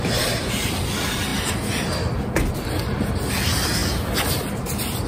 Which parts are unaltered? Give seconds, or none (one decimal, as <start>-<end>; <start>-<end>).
0.0-5.1